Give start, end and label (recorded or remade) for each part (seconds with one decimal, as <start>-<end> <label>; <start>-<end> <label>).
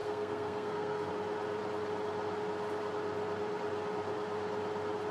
0.0-1.1 remade; 1.1-5.1 recorded